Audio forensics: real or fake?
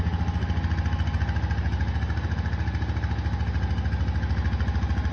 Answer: real